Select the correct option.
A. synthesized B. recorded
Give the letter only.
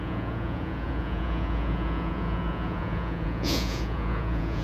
A